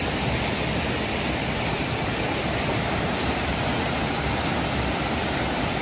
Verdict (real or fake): fake